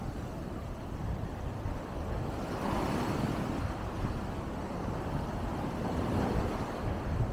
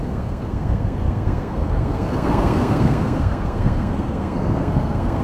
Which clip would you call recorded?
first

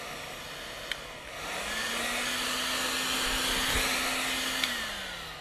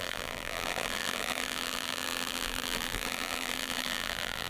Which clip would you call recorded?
first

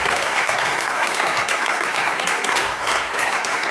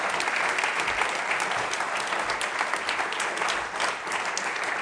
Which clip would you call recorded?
second